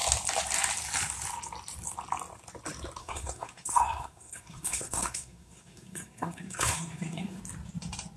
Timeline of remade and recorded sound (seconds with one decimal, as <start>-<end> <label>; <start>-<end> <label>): 0.0-3.0 recorded; 3.0-7.4 remade; 7.4-8.2 recorded